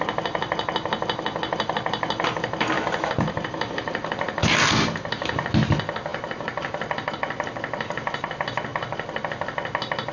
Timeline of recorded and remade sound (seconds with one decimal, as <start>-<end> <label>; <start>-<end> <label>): 0.0-10.1 recorded